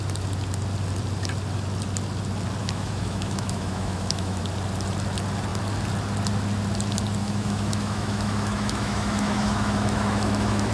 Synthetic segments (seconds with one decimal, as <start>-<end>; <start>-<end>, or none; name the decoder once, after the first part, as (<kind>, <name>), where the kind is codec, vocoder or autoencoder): 2.6-4.4 (autoencoder, DAC-VAE); 7.2-10.7